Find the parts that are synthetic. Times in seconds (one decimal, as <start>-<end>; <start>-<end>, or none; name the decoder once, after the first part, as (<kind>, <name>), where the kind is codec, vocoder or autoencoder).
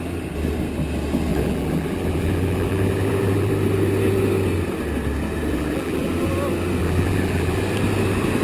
1.3-3.5 (vocoder, BigVGAN v2); 5.5-6.1; 6.8-7.6